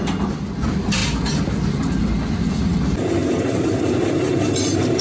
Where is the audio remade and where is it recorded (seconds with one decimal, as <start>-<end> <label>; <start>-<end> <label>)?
0.0-5.0 recorded